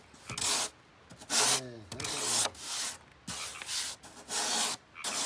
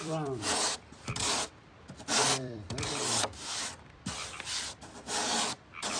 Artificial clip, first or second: second